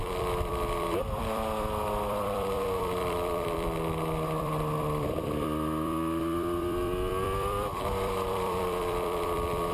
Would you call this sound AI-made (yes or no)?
yes